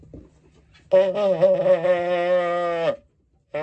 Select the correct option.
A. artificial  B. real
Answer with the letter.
B